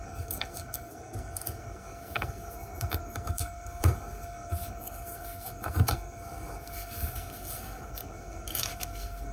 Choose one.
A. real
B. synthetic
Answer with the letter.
B